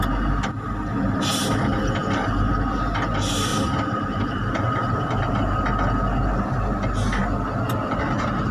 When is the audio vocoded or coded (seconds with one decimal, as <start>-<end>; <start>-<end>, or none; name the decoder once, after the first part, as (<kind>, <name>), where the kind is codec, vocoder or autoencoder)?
3.5-5.6 (vocoder, BigVGAN v2)